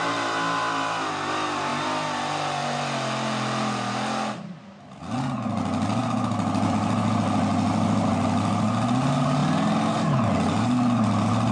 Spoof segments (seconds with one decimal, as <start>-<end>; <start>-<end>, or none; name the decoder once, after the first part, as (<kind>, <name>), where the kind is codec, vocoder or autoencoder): none